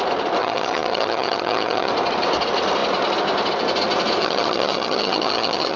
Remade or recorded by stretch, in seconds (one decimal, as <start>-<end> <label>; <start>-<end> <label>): 0.0-0.4 recorded; 0.4-1.9 remade; 1.9-4.2 recorded; 4.2-5.8 remade